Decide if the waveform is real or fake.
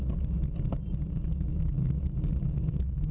real